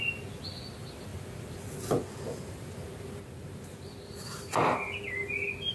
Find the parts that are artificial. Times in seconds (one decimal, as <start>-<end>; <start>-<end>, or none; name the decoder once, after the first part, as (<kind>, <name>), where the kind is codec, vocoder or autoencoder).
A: 1.1-1.7 (vocoder, BigVGAN v2)